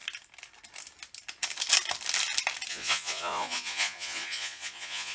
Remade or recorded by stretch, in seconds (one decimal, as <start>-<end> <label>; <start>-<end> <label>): 0.0-2.7 recorded; 2.7-5.1 remade